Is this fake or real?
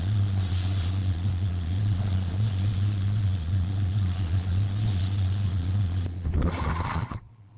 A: fake